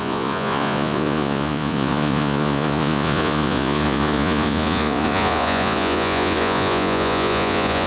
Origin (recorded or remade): remade